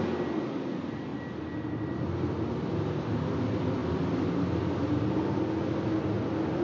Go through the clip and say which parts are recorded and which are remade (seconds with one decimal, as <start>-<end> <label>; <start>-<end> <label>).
0.0-6.6 recorded